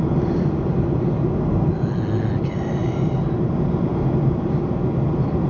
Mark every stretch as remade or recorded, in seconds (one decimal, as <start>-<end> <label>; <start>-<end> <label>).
0.0-5.5 recorded